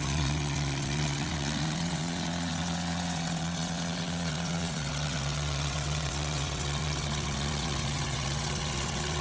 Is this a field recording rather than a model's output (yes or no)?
no